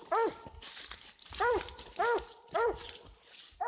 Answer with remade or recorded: recorded